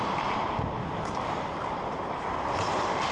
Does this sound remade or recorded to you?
recorded